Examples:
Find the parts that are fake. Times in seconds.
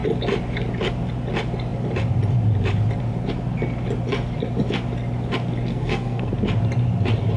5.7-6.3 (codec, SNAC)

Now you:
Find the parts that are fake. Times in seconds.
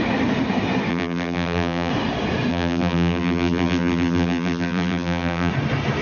0.9-1.9 (vocoder, BigVGAN v2); 2.5-5.5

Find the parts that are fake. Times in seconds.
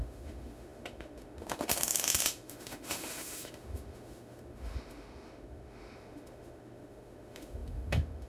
0.0-8.3 (autoencoder, DAC-VAE)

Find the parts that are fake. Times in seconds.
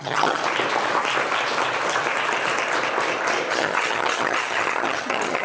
0.0-0.4 (vocoder, HiFi-GAN); 3.5-5.4